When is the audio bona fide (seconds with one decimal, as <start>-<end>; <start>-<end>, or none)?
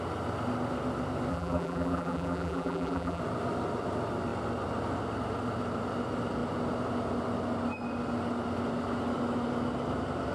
0.0-1.3; 3.2-10.3